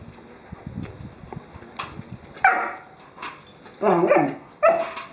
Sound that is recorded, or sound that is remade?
recorded